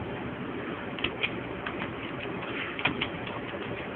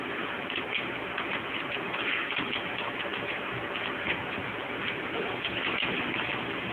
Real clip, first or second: second